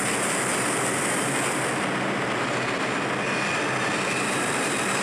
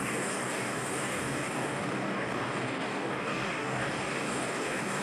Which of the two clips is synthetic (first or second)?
second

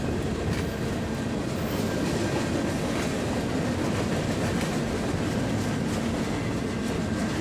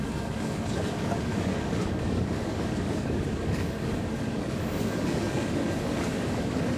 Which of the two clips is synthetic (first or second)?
second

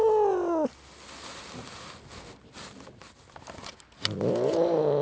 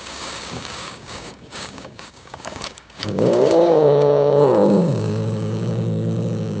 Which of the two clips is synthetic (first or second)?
second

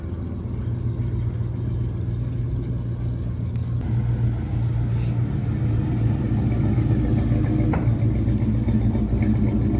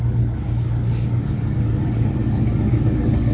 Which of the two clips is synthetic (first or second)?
second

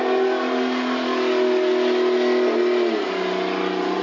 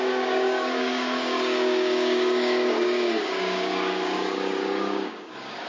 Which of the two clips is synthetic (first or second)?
second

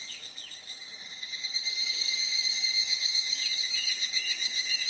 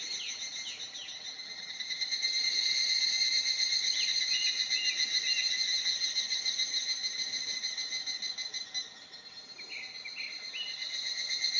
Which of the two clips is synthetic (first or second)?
first